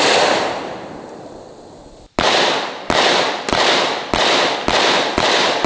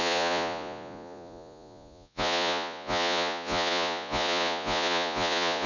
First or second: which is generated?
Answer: second